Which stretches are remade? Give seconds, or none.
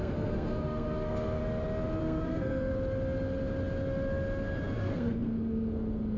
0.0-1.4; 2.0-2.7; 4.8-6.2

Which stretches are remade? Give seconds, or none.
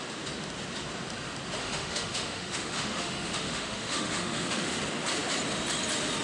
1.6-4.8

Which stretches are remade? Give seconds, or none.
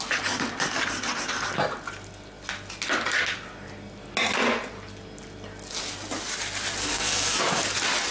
6.8-7.4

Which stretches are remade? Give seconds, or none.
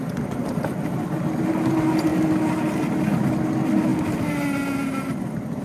none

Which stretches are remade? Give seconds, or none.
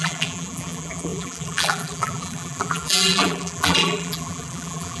0.0-5.0